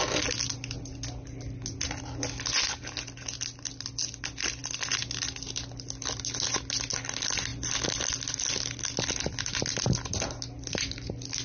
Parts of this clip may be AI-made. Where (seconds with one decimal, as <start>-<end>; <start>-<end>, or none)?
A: none

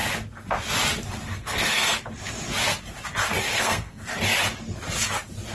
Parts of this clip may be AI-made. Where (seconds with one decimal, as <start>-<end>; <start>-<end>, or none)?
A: 1.2-2.0; 3.5-4.1

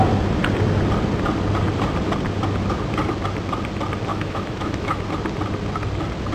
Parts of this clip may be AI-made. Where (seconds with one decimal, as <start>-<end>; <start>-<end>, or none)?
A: 4.1-5.0

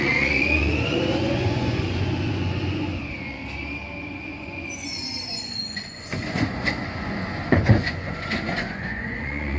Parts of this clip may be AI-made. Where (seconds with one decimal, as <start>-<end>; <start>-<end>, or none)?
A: 0.0-3.4; 4.0-9.6